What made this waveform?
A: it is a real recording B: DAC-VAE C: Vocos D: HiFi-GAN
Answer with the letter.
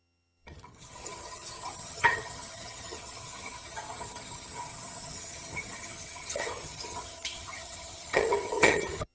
D